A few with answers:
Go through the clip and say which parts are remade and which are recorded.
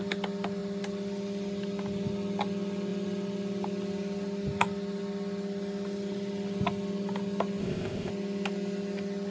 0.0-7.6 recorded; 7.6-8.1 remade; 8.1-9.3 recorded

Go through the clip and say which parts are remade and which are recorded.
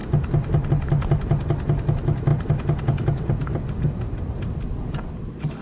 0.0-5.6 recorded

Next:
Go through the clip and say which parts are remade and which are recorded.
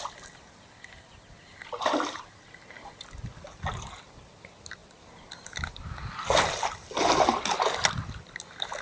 0.0-8.8 recorded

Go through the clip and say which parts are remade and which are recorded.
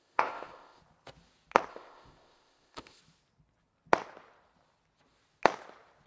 0.0-0.8 remade; 0.8-1.7 recorded; 1.7-3.0 remade; 3.0-6.1 recorded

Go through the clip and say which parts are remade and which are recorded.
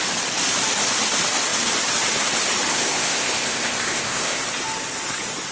0.0-2.7 recorded; 2.7-4.4 remade; 4.4-5.5 recorded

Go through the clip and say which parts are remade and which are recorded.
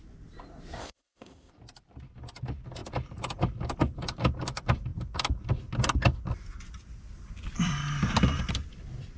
0.0-0.8 recorded; 0.8-1.5 remade; 1.5-9.2 recorded